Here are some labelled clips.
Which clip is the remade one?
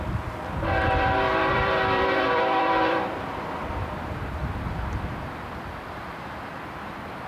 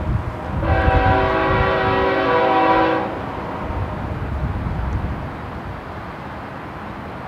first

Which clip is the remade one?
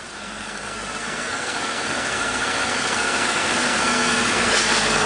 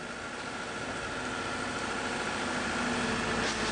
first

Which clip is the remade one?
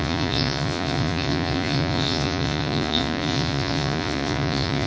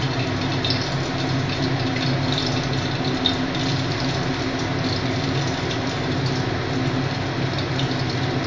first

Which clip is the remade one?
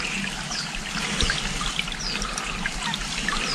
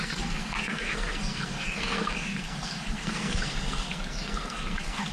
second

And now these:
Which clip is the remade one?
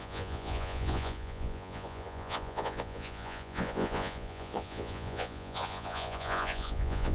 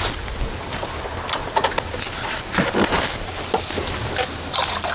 first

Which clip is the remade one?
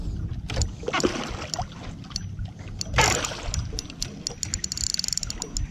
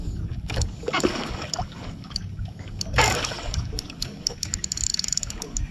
second